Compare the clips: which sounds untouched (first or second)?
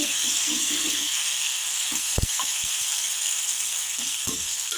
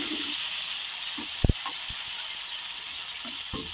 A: second